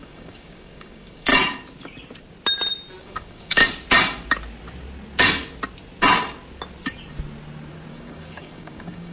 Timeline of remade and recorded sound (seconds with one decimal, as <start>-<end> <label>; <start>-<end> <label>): 0.0-1.3 remade; 1.3-3.0 recorded; 3.0-3.6 remade; 3.6-7.9 recorded; 7.9-9.1 remade